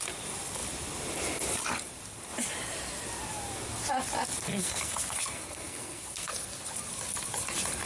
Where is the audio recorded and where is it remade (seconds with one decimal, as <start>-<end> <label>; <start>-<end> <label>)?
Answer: 0.0-4.5 recorded; 4.5-6.6 remade; 6.6-7.9 recorded